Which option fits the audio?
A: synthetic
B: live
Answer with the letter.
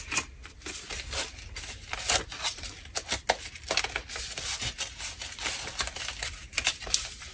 B